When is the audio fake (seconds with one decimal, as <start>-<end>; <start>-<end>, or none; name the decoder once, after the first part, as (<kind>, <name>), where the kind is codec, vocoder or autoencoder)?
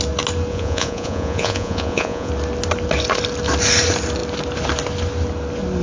0.5-2.3 (vocoder, Vocos)